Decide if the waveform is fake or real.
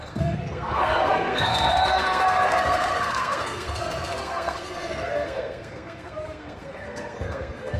fake